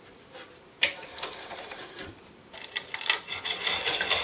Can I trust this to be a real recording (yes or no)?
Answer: yes